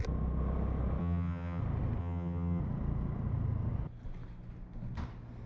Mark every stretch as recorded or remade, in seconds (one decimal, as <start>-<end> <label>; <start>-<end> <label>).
0.0-1.0 recorded; 1.0-1.6 remade; 1.6-2.0 recorded; 2.0-2.6 remade; 2.6-5.5 recorded